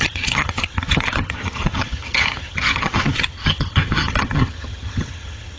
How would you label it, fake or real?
fake